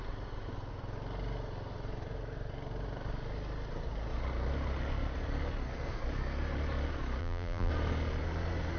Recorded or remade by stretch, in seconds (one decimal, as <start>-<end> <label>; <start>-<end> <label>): 0.0-7.2 recorded; 7.2-7.7 remade; 7.7-8.8 recorded